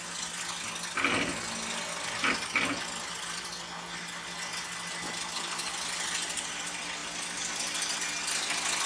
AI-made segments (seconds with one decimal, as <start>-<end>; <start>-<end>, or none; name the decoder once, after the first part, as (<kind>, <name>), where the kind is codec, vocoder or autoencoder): none